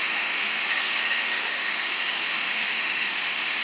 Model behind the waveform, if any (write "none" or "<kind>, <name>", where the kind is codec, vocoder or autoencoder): autoencoder, DAC-VAE